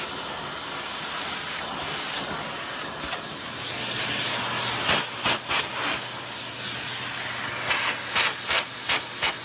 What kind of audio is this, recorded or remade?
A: recorded